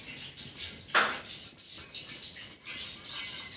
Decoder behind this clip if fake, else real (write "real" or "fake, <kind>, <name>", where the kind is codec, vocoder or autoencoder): real